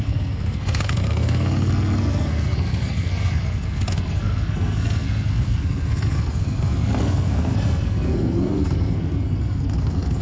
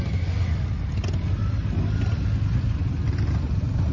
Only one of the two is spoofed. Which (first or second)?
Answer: first